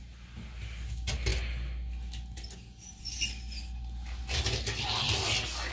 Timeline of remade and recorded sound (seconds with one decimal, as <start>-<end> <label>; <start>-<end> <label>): 0.0-5.7 recorded